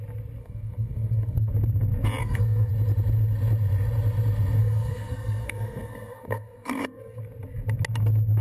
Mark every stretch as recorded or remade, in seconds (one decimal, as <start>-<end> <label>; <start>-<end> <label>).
0.0-0.4 recorded; 0.4-1.5 remade; 1.5-2.2 recorded; 2.2-2.7 remade; 2.7-4.6 recorded; 4.6-7.2 remade; 7.2-8.4 recorded